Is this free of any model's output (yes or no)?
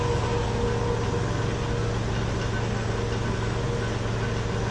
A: yes